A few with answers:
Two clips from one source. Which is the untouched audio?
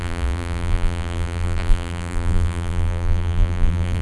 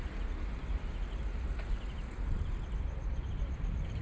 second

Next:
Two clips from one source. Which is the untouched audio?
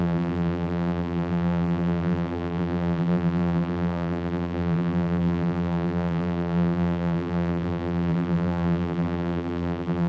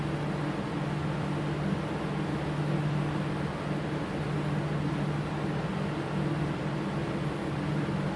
second